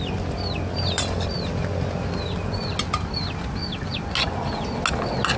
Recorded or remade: recorded